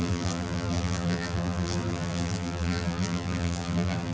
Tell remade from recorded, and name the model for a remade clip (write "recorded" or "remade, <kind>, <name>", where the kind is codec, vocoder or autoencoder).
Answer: remade, vocoder, BigVGAN v2